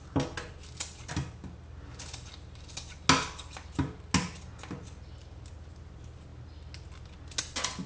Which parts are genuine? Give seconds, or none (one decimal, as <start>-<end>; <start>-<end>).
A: 0.0-7.9